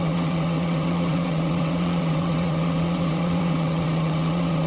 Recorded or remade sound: remade